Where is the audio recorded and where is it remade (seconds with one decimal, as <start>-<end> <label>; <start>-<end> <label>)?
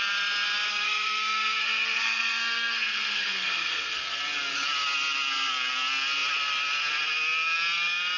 0.0-0.7 recorded; 0.7-4.2 remade; 4.2-8.2 recorded